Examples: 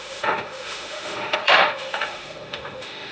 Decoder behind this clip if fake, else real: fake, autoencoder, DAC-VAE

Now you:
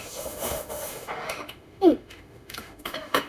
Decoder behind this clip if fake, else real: fake, autoencoder, DAC-VAE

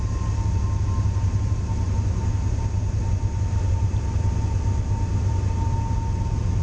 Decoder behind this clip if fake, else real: real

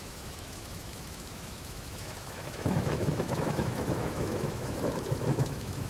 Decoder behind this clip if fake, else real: fake, autoencoder, DAC-VAE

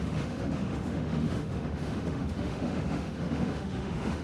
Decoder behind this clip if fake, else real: fake, autoencoder, DAC-VAE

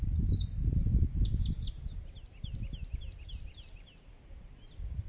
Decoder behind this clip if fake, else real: real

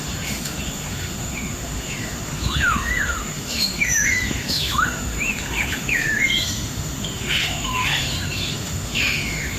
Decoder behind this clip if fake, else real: fake, autoencoder, DAC-VAE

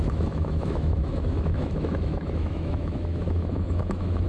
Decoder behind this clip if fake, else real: fake, autoencoder, DAC-VAE